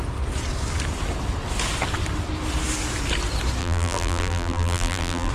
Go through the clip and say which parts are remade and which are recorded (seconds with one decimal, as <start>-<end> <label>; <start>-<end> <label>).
0.0-3.6 recorded; 3.6-5.3 remade